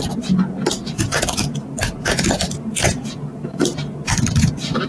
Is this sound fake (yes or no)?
no